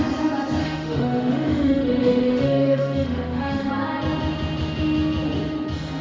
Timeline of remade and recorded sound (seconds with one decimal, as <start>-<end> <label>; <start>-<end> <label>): 0.0-0.6 recorded; 0.6-3.7 remade; 3.7-6.0 recorded